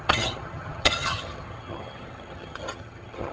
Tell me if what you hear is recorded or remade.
remade